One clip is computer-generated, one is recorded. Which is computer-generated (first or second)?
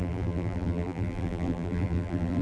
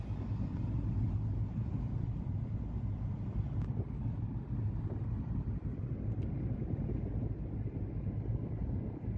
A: first